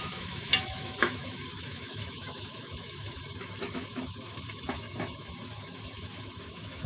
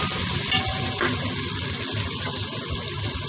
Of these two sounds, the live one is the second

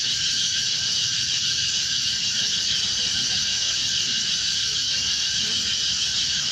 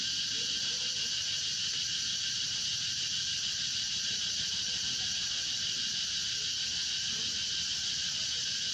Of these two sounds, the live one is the second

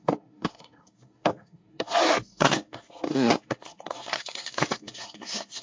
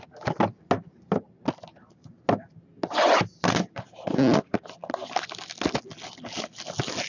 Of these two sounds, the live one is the second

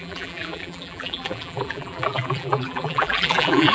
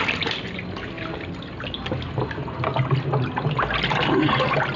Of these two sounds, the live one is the second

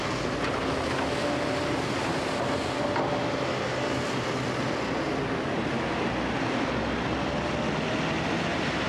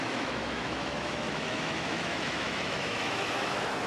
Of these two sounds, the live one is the first